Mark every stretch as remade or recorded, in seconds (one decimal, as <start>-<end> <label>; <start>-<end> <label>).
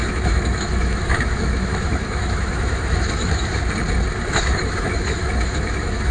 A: 0.0-3.6 remade; 3.6-4.3 recorded; 4.3-6.1 remade